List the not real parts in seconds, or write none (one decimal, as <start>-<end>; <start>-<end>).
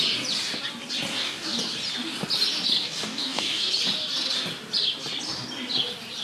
1.1-1.6; 2.8-3.7